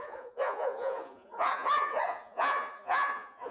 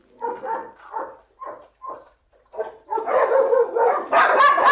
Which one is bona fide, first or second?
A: second